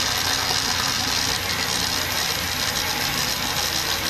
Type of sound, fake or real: real